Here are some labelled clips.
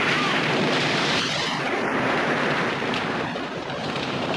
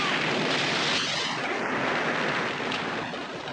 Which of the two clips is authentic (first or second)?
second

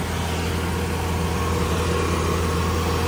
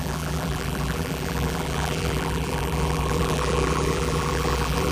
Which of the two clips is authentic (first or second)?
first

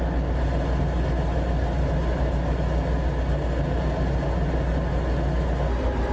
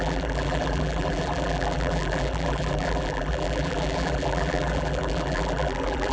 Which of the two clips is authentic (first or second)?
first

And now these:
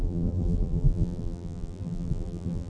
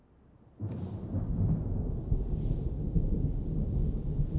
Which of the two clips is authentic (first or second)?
second